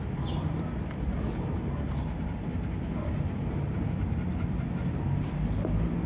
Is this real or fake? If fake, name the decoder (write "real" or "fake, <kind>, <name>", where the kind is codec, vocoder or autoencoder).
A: real